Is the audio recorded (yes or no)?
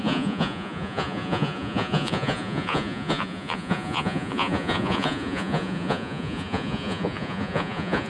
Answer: no